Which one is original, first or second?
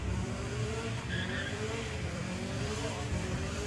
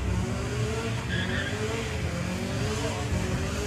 second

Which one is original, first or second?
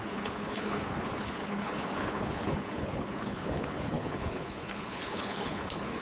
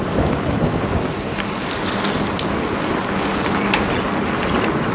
second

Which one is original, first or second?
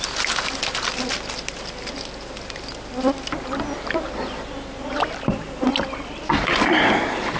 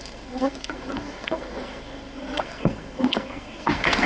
first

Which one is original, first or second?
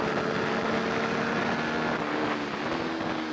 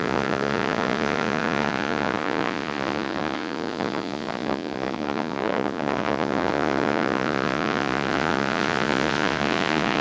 first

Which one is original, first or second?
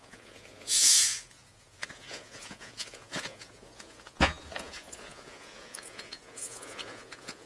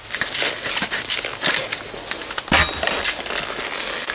second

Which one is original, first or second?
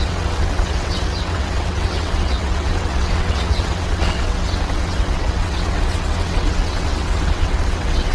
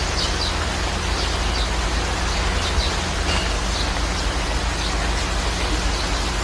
second